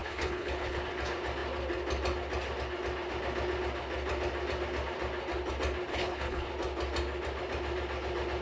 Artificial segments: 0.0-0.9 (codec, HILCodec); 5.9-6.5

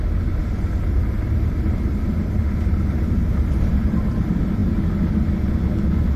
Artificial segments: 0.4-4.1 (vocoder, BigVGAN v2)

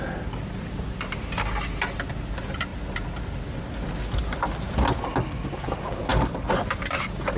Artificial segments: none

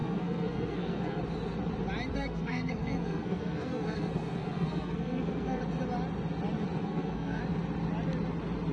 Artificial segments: 0.0-1.2 (codec, SNAC); 2.1-5.6; 6.8-7.4